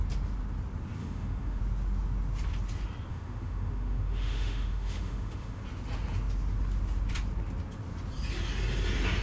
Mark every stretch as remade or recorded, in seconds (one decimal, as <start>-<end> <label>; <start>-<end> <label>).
0.0-1.0 recorded; 1.0-1.6 remade; 1.6-3.1 recorded; 3.1-5.6 remade; 5.6-9.2 recorded